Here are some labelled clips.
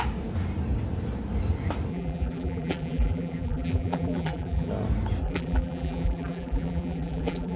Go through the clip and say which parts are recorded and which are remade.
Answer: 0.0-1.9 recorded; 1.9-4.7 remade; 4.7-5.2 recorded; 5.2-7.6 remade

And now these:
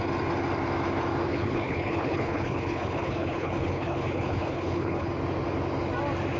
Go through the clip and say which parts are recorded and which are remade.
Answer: 0.0-1.3 recorded; 1.3-5.1 remade; 5.1-6.4 recorded

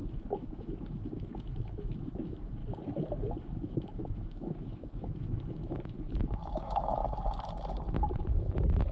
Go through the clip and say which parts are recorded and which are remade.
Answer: 0.0-2.6 remade; 2.6-3.4 recorded; 3.4-7.0 remade; 7.0-8.9 recorded

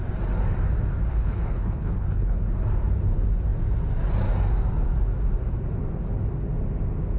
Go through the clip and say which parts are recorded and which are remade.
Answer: 0.0-1.1 recorded; 1.1-2.4 remade; 2.4-7.2 recorded